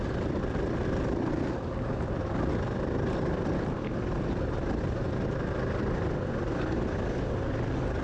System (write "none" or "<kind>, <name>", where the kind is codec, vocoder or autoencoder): none